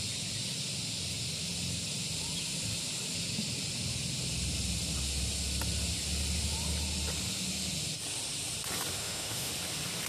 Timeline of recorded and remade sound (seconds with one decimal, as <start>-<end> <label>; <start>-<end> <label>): 0.0-9.0 recorded; 9.0-9.5 remade; 9.5-10.1 recorded